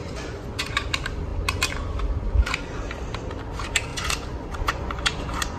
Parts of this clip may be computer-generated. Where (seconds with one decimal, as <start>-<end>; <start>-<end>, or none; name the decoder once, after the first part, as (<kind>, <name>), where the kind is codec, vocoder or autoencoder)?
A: 0.0-0.9 (vocoder, Vocos); 3.9-5.6